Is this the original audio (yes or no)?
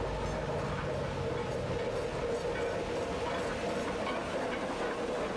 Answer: yes